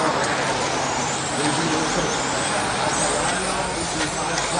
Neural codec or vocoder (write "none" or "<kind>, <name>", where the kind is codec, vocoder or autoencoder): none